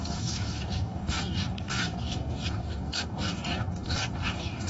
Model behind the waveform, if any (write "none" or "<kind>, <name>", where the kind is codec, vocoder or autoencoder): codec, DAC